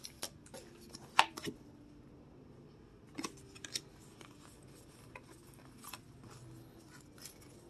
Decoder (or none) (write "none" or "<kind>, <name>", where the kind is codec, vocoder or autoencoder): none